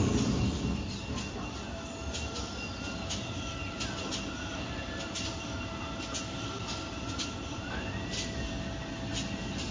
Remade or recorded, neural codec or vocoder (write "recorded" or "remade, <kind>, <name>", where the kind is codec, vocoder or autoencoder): recorded